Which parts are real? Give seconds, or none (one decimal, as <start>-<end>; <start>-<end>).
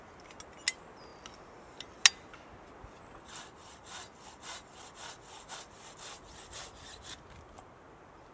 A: 0.0-8.3